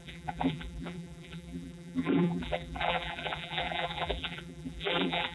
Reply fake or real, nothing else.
fake